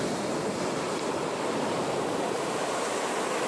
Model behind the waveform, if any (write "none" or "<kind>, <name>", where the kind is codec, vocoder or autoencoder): none